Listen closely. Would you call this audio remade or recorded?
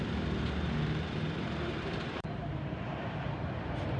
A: remade